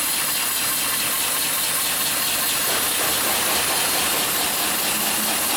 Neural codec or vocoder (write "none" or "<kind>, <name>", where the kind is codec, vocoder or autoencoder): none